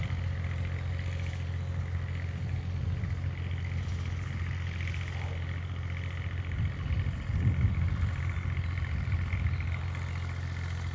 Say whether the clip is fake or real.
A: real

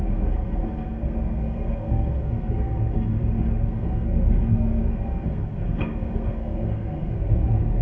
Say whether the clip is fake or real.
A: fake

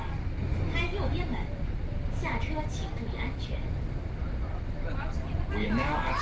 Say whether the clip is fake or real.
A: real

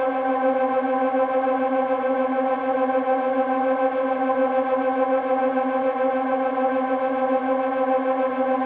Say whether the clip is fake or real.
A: real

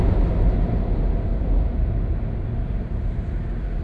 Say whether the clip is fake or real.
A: real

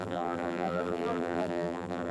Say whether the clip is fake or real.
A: fake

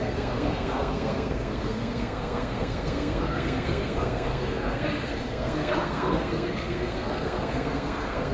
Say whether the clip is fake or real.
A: fake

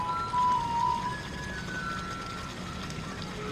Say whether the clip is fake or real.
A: real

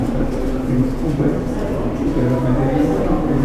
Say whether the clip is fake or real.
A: real